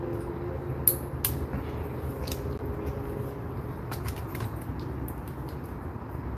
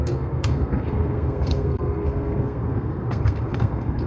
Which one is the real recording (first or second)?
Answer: first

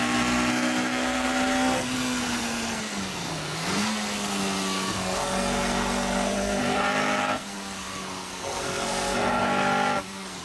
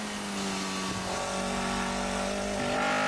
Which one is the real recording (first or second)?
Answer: second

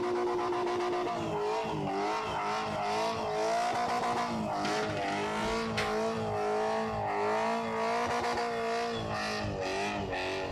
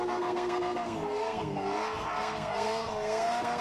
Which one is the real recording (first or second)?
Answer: first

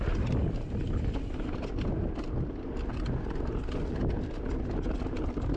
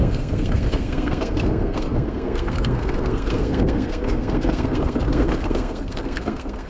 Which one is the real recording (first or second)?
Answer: first